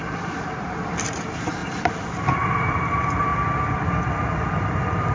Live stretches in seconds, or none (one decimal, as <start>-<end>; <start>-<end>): 3.3-4.2